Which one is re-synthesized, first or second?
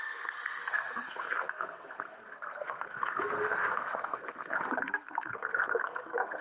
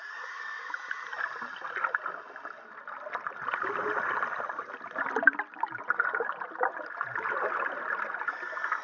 first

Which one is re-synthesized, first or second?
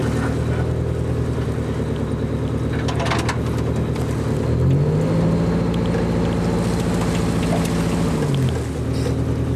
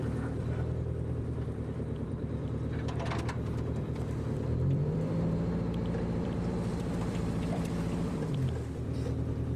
second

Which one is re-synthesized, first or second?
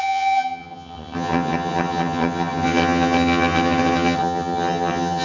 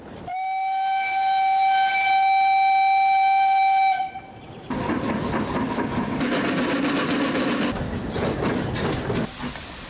first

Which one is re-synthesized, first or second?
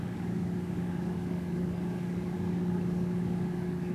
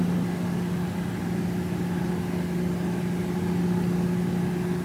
first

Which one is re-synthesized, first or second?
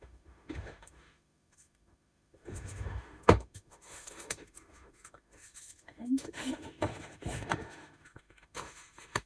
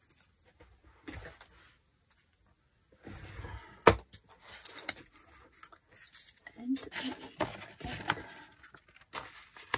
first